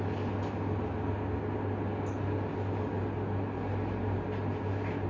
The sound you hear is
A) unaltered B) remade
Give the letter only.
A